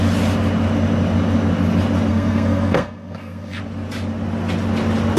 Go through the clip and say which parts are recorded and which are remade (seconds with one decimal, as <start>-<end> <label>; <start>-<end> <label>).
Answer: 0.0-2.1 recorded; 2.1-3.6 remade; 3.6-5.2 recorded